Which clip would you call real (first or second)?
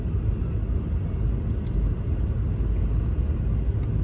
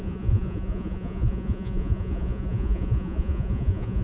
first